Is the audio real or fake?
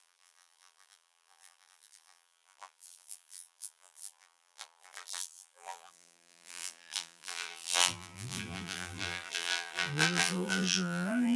fake